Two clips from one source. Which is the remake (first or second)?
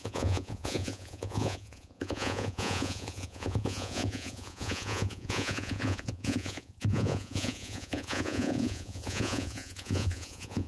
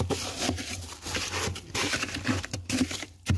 first